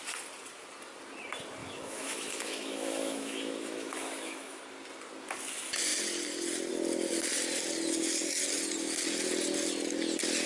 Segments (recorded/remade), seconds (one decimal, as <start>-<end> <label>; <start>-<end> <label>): 0.0-1.6 recorded; 1.6-4.6 remade; 4.6-10.5 recorded

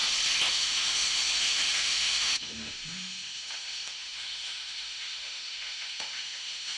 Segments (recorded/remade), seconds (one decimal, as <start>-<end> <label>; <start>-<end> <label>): 0.0-0.5 recorded; 0.5-6.8 remade

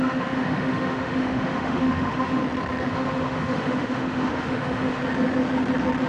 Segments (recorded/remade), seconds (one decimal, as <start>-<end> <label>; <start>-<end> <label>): 0.0-2.4 remade; 2.4-2.9 recorded; 2.9-5.0 remade; 5.0-6.1 recorded

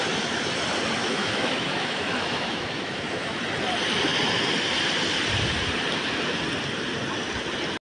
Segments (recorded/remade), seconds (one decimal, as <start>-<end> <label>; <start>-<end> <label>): 0.0-1.0 recorded; 1.0-3.4 remade; 3.4-7.9 recorded

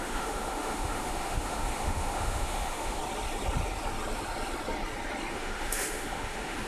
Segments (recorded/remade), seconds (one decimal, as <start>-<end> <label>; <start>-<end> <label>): 0.0-3.0 remade; 3.0-5.3 recorded; 5.3-6.7 remade

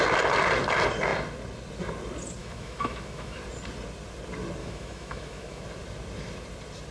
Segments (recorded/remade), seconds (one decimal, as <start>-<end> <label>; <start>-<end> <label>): 0.0-2.4 recorded; 2.4-3.4 remade; 3.4-4.6 recorded; 4.6-5.6 remade; 5.6-6.9 recorded

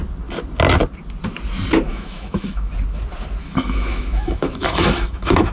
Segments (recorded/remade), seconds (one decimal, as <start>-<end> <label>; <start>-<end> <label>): 0.0-1.9 recorded; 1.9-2.7 remade; 2.7-3.4 recorded; 3.4-5.5 remade